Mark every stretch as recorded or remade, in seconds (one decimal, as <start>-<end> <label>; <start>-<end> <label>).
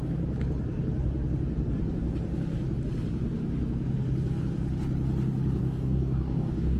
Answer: 0.0-5.6 recorded; 5.6-6.8 remade